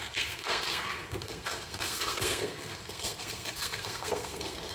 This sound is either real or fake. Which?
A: fake